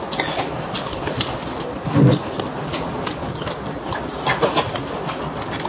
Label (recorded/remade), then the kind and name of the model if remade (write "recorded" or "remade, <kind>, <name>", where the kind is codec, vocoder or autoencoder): recorded